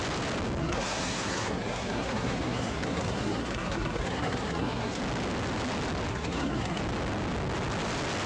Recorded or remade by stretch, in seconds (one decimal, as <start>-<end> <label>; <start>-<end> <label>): 0.0-0.6 recorded; 0.6-5.0 remade; 5.0-6.1 recorded; 6.1-6.8 remade; 6.8-8.3 recorded